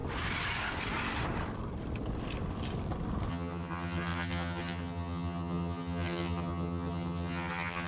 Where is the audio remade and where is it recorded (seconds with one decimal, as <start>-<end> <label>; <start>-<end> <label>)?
0.0-3.3 recorded; 3.3-7.9 remade